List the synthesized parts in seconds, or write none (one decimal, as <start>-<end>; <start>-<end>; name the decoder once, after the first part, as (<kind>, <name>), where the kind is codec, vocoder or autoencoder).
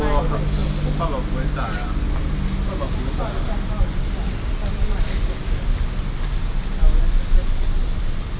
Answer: none